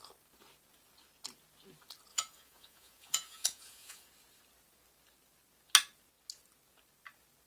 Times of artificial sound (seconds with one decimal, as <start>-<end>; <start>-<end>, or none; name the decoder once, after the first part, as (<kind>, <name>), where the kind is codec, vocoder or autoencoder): 2.1-4.1 (vocoder, Vocos)